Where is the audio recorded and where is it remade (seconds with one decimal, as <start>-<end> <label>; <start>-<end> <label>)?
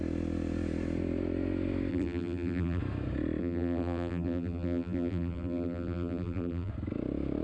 0.0-1.9 recorded; 1.9-2.8 remade; 2.8-3.4 recorded; 3.4-6.7 remade; 6.7-7.4 recorded